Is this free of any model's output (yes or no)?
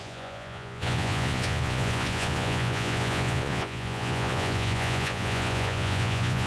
no